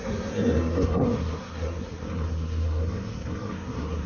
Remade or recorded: remade